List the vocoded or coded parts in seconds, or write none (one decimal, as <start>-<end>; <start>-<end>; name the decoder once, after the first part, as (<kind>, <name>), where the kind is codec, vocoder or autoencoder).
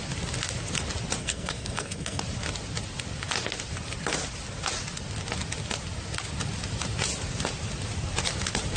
1.2-2.2 (codec, SNAC)